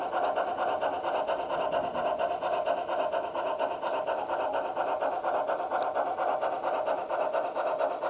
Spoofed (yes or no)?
no